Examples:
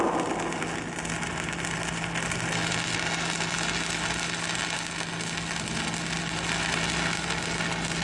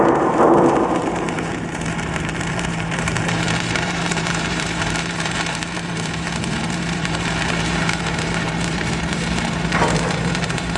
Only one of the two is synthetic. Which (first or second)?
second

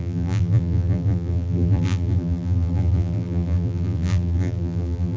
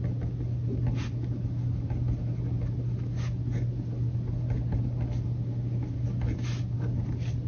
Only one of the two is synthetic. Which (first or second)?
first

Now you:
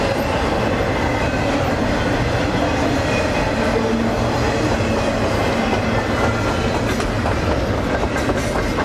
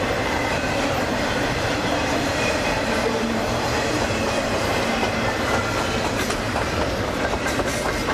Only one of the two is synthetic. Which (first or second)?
second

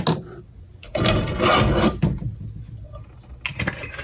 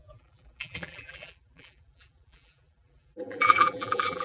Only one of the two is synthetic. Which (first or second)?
second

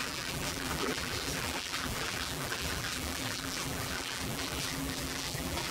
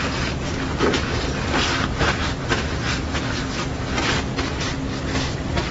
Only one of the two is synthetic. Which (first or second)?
first